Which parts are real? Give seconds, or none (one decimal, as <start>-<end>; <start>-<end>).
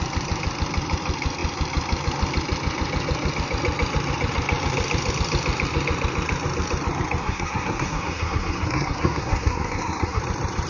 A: 0.0-7.2; 10.2-10.7